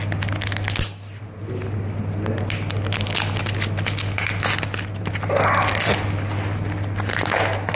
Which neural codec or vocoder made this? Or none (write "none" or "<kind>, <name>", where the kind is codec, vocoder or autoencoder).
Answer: none